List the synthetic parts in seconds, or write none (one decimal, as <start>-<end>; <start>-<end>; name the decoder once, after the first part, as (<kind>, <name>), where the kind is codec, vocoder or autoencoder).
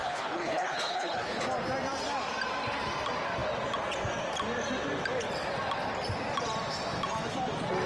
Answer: 0.0-1.4 (codec, HILCodec)